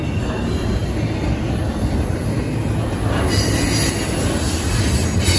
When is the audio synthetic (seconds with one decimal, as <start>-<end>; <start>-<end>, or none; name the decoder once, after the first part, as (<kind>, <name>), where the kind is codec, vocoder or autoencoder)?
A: none